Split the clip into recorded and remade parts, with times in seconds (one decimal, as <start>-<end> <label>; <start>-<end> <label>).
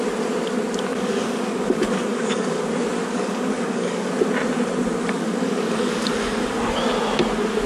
0.0-0.9 recorded; 0.9-2.6 remade; 2.6-3.0 recorded; 3.0-4.1 remade; 4.1-5.0 recorded; 5.0-6.1 remade; 6.1-7.7 recorded